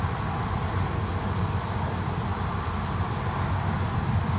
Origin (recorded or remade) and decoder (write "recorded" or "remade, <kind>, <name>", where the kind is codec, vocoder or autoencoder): recorded